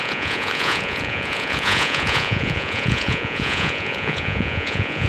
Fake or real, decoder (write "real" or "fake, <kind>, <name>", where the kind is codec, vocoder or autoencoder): fake, vocoder, Vocos